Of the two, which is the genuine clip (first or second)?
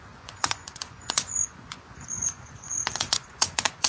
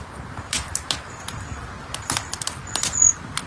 second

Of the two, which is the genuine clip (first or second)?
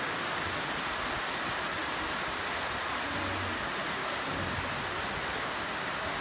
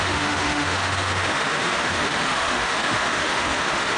first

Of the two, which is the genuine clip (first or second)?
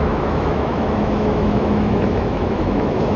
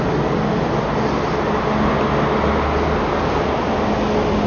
second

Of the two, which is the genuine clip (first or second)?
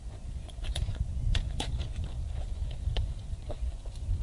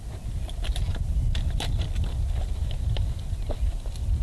second